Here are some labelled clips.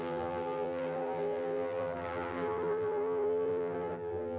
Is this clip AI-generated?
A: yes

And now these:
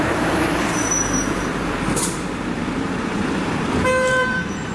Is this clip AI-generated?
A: yes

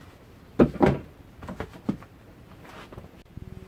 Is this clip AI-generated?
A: no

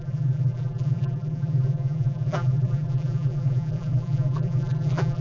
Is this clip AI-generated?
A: yes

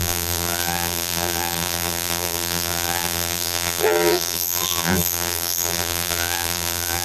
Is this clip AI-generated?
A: yes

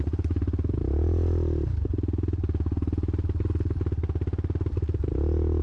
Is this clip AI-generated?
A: no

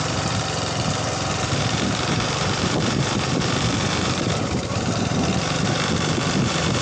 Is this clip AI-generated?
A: yes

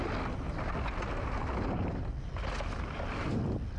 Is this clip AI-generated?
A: no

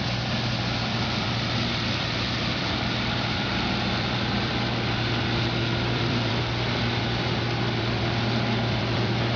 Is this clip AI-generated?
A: yes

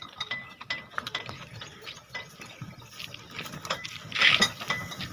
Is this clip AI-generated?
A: no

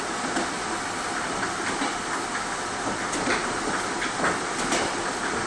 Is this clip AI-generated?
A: no